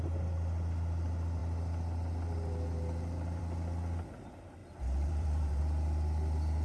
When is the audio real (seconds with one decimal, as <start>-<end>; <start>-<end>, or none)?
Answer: 0.0-4.6; 5.6-6.6